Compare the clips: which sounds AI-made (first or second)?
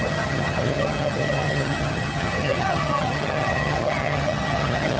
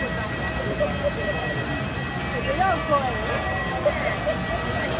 first